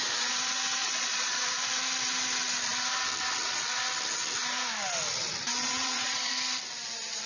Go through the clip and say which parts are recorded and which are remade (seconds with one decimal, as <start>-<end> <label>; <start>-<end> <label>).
0.0-0.8 recorded; 0.8-1.4 remade; 1.4-5.6 recorded; 5.6-6.3 remade; 6.3-7.3 recorded